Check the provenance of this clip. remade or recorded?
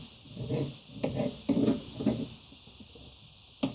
recorded